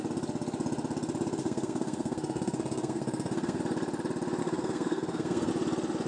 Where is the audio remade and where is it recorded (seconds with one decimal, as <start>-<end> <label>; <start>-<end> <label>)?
0.0-1.4 recorded; 1.4-3.6 remade; 3.6-4.4 recorded; 4.4-5.5 remade; 5.5-6.1 recorded